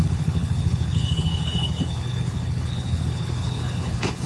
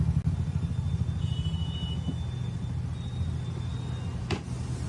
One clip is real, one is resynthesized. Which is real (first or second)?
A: second